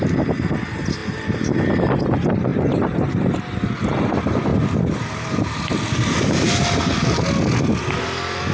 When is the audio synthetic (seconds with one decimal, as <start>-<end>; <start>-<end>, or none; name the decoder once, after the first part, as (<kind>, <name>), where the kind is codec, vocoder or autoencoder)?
2.5-3.4 (vocoder, BigVGAN v2); 4.5-7.2